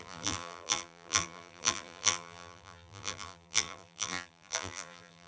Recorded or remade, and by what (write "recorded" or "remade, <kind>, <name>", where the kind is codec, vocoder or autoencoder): remade, vocoder, BigVGAN v2